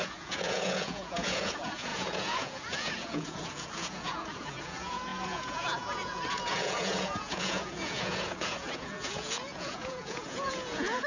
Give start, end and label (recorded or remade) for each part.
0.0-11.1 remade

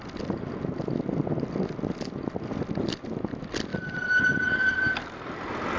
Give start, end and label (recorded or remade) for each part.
0.0-5.8 recorded

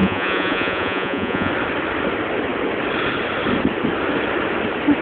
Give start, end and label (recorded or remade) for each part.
0.0-1.5 remade; 1.5-5.0 recorded